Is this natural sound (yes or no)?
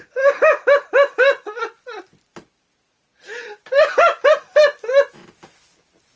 yes